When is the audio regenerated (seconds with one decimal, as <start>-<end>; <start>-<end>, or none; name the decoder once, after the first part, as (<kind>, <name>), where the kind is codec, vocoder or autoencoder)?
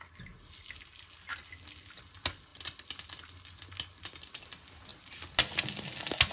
none